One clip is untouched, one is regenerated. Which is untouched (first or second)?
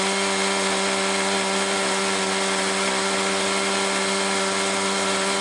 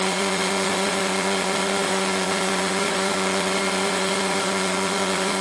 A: first